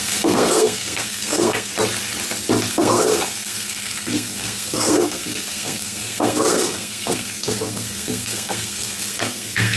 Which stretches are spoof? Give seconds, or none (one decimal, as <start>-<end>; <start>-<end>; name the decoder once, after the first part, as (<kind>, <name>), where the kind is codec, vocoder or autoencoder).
0.0-1.7 (codec, SNAC); 2.7-9.8